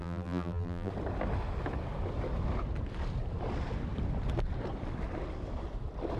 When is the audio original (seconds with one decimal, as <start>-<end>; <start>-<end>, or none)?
0.9-6.2